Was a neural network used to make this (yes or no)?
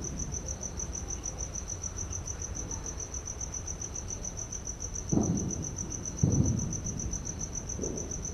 yes